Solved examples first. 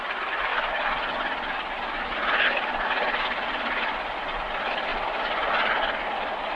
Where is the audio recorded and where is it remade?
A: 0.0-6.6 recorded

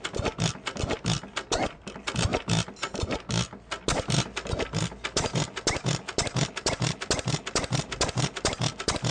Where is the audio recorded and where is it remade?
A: 0.0-9.1 recorded

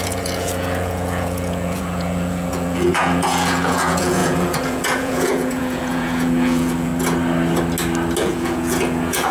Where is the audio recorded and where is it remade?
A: 0.0-6.9 remade; 6.9-8.2 recorded; 8.2-9.3 remade

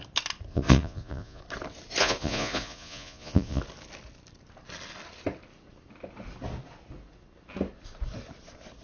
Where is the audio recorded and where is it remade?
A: 0.0-0.5 recorded; 0.5-1.4 remade; 1.4-2.0 recorded; 2.0-3.6 remade; 3.6-8.8 recorded

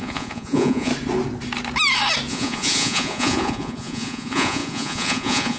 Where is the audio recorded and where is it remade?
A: 0.0-0.9 remade; 0.9-2.3 recorded; 2.3-5.6 remade

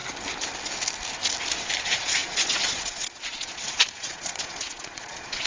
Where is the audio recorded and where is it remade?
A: 0.0-1.8 recorded; 1.8-5.5 remade